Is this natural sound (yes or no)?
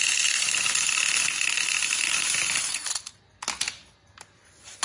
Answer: yes